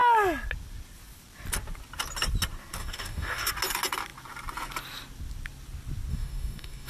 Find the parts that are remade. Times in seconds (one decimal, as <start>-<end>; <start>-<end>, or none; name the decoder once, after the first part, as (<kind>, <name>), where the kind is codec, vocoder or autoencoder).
2.8-3.5 (codec, DAC); 6.1-6.9